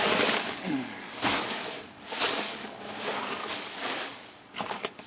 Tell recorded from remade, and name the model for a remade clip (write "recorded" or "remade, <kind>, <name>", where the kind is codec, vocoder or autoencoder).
remade, codec, DAC